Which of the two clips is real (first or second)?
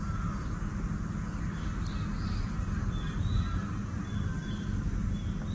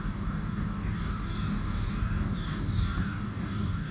first